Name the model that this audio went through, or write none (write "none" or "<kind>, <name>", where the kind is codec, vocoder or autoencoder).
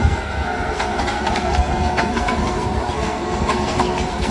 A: codec, SNAC